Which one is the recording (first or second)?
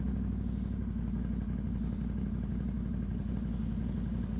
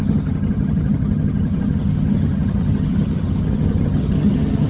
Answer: first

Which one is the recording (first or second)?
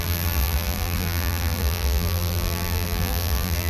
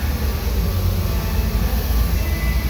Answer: second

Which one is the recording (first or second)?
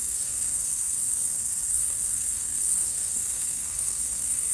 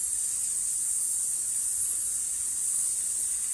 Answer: second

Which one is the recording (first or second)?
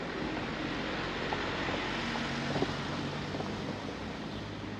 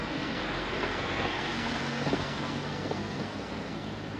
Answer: first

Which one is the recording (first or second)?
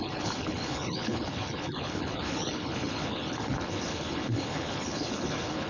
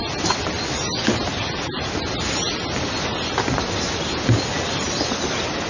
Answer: second